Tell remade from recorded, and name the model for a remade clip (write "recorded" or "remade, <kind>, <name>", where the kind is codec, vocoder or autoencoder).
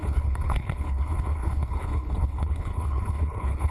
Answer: remade, codec, HILCodec